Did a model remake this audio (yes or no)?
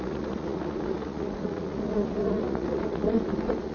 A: yes